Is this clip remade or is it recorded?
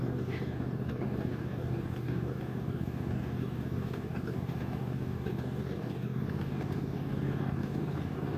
remade